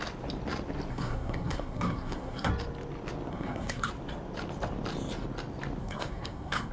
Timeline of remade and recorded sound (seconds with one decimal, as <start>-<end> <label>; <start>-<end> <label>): 0.0-0.9 recorded; 0.9-2.5 remade; 2.5-3.3 recorded; 3.3-3.9 remade; 3.9-5.8 recorded; 5.8-6.7 remade